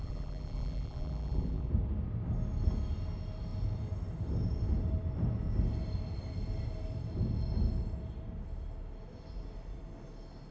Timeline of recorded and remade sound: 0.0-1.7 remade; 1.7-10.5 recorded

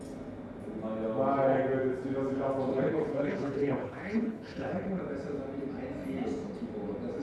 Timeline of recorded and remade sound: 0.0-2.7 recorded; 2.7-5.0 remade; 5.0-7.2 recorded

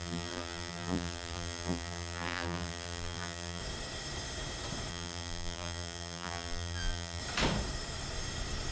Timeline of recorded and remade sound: 0.0-3.6 remade; 3.6-4.9 recorded; 4.9-7.2 remade; 7.2-8.7 recorded